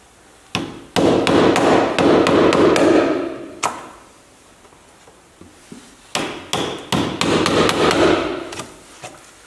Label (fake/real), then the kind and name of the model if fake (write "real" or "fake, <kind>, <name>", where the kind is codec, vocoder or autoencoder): real